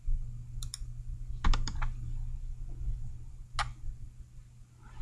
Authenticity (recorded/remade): recorded